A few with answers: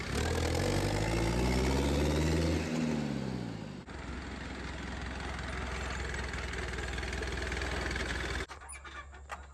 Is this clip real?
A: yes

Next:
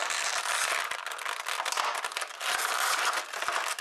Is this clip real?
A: yes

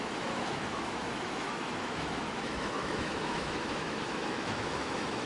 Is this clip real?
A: no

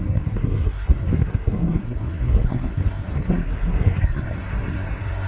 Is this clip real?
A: no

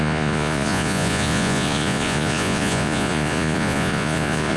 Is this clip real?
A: no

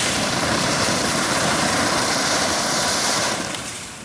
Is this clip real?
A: no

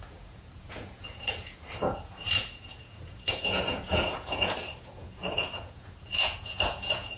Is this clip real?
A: no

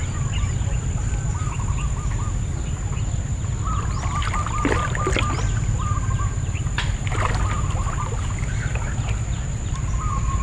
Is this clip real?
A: yes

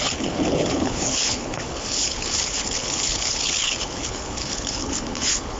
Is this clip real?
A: no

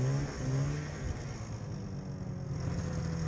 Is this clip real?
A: yes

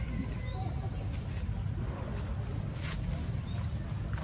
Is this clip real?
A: yes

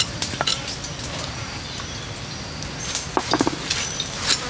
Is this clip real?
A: yes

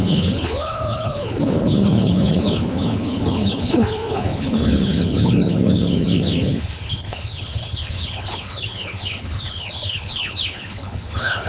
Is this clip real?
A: no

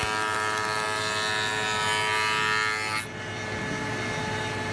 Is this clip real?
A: yes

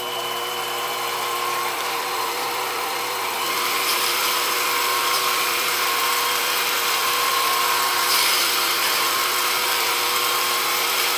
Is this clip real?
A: no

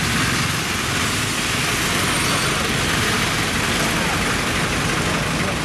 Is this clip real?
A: yes